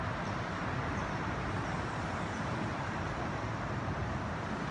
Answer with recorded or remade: remade